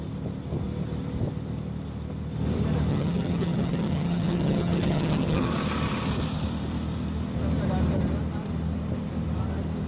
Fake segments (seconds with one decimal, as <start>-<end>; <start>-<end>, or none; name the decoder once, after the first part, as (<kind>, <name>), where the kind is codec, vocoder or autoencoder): 2.9-5.5 (vocoder, HiFi-GAN)